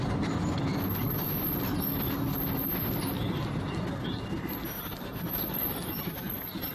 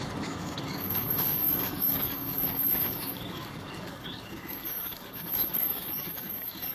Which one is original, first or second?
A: first